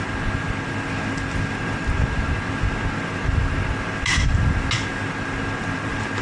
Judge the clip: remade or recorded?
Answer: recorded